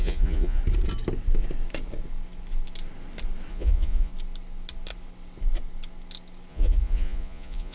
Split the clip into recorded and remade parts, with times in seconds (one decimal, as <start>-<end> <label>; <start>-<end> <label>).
0.0-0.6 remade; 0.6-3.5 recorded; 3.5-4.1 remade; 4.1-6.5 recorded; 6.5-7.7 remade